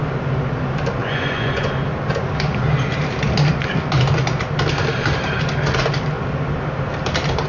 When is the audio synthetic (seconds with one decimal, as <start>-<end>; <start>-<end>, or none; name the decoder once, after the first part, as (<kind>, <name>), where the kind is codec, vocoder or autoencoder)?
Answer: 1.0-1.7 (vocoder, Vocos)